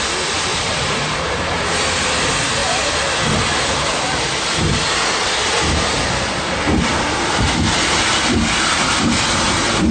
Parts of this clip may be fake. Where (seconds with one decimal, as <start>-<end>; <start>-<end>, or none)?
0.5-1.8